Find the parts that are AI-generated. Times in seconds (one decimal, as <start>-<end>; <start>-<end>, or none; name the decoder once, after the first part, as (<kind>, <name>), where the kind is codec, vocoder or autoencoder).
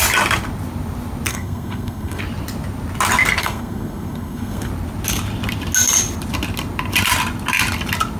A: 1.3-2.2 (codec, SNAC); 3.4-4.7